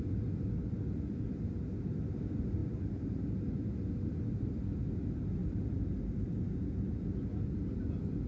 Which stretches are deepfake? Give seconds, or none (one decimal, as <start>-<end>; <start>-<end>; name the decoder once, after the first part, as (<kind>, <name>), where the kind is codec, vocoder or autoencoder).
none